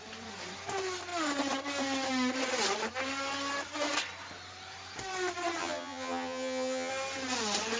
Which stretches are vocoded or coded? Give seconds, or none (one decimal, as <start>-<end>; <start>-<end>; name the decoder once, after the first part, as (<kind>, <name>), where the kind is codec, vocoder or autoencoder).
5.6-6.9 (vocoder, HiFi-GAN)